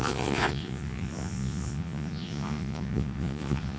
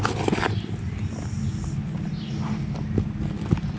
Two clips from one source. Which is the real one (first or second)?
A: second